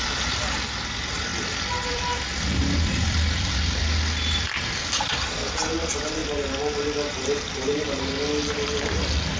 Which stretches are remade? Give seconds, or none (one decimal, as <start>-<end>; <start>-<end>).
1.3-3.5; 6.2-9.4